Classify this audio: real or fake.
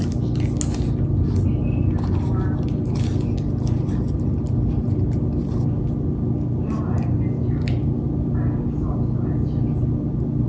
real